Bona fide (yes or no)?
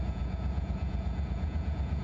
no